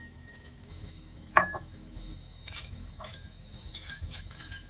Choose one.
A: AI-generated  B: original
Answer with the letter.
A